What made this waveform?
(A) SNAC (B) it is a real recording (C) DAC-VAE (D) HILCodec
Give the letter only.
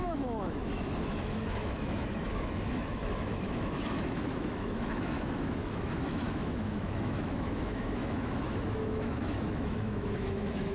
C